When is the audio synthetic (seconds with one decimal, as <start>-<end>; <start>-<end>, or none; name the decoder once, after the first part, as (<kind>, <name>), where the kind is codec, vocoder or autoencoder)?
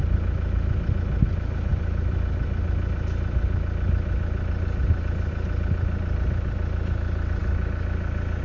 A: none